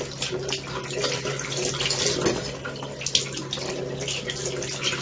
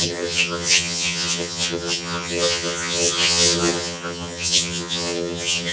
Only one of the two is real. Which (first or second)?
first